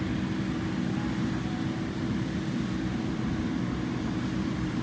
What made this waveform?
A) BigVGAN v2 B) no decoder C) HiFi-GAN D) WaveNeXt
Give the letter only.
B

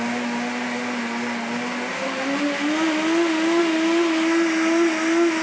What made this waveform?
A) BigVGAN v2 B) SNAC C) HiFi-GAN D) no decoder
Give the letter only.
D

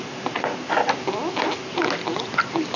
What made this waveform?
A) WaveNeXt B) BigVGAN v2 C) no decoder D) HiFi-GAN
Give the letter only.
C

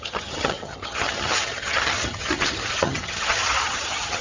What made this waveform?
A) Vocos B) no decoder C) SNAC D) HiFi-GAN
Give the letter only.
D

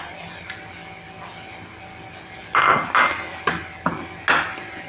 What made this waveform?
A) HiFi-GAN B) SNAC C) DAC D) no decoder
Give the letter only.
D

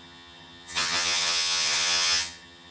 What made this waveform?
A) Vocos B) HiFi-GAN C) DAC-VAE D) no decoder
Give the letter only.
B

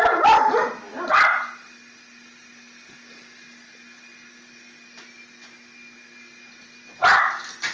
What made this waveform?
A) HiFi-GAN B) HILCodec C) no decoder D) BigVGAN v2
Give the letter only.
C